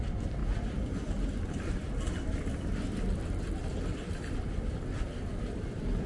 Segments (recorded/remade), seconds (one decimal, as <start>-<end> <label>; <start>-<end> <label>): 0.0-6.1 recorded